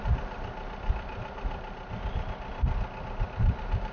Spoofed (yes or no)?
no